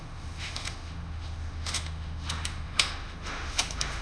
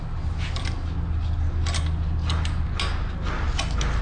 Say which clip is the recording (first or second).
second